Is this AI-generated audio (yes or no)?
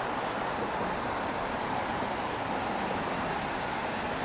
no